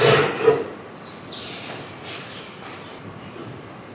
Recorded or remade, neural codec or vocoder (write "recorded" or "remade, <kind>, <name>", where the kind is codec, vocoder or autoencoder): recorded